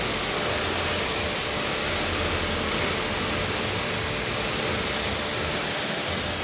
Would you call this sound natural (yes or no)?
yes